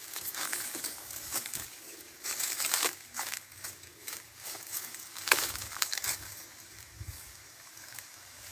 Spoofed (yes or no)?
yes